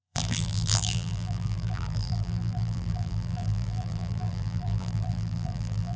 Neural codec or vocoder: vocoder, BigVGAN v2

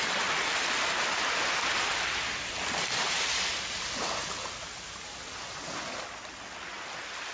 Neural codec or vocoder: none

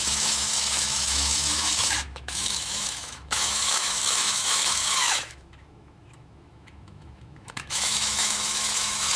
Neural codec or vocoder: autoencoder, DAC-VAE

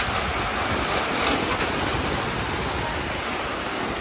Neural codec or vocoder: none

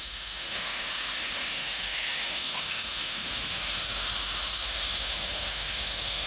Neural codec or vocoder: autoencoder, DAC-VAE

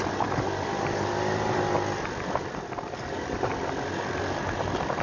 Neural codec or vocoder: none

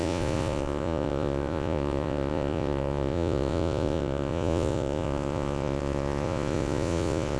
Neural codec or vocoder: vocoder, Vocos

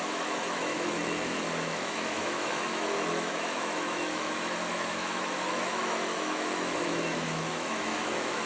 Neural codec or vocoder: autoencoder, DAC-VAE